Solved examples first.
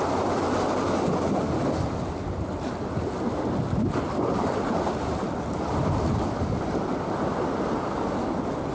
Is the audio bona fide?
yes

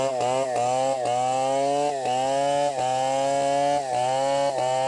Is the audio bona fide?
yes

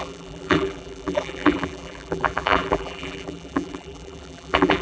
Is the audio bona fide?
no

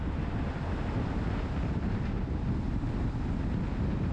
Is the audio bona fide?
yes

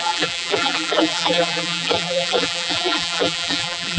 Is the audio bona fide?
no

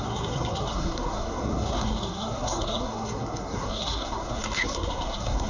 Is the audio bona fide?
no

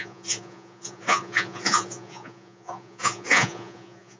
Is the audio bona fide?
no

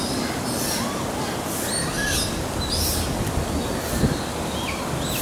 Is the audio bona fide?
yes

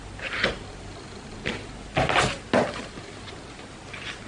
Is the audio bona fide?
yes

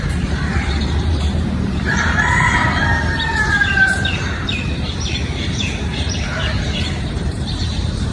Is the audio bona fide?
no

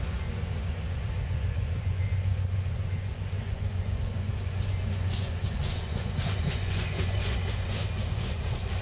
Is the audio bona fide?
no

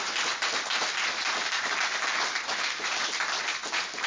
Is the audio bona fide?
yes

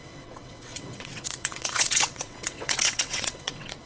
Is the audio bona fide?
no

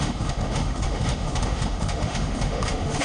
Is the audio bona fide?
no